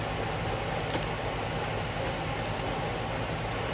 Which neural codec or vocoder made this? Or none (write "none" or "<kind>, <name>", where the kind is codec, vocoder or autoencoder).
none